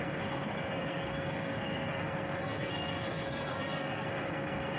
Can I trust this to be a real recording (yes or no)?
no